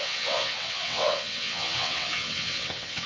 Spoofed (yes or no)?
yes